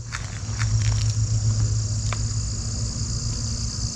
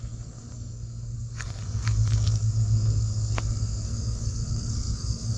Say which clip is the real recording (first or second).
first